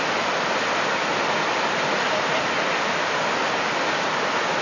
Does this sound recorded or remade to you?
recorded